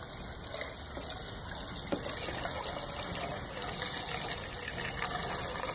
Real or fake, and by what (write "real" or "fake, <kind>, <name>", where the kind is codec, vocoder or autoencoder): real